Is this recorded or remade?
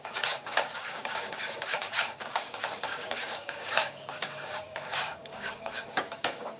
remade